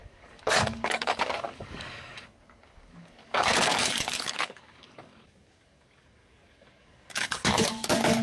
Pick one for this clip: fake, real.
fake